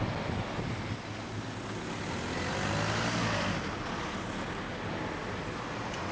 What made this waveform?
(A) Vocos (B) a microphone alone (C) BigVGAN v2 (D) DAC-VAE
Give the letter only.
B